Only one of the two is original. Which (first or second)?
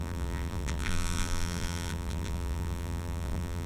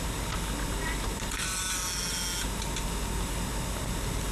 second